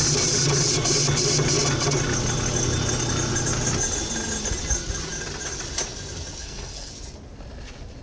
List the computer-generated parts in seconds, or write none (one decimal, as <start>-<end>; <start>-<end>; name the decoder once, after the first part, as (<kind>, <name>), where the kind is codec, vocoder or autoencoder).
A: 6.4-6.9 (codec, SNAC)